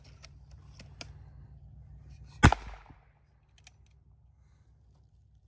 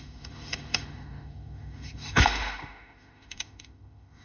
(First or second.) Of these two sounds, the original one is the first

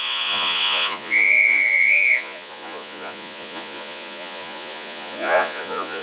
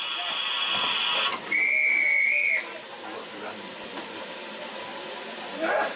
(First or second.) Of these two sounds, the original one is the second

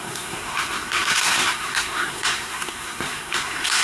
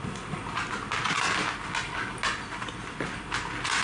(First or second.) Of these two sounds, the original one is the second